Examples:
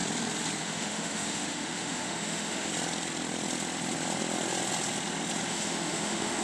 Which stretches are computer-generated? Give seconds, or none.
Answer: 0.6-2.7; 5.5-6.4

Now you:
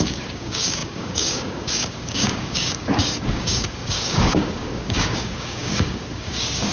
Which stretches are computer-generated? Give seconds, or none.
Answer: 0.0-6.7

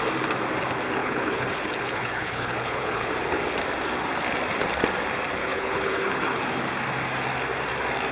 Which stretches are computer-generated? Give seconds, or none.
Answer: 1.0-3.1; 5.4-6.4